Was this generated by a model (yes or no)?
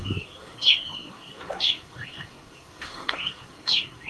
yes